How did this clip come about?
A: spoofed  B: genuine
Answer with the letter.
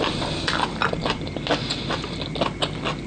B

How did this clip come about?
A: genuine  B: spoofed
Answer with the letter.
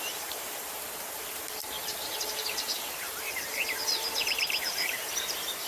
B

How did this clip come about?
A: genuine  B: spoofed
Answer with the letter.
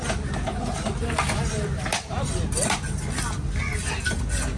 A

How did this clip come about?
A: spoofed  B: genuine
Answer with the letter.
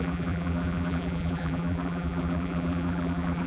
A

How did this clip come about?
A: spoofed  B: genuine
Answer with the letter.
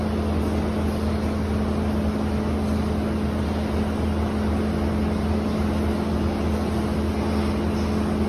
B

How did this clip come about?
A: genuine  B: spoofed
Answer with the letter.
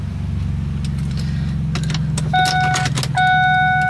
A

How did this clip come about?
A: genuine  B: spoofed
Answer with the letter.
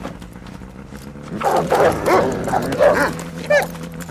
A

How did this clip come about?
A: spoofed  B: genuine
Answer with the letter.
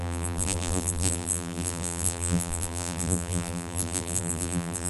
A